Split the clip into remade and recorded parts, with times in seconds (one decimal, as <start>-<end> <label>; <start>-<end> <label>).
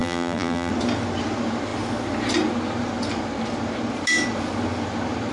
0.0-0.7 remade; 0.7-5.3 recorded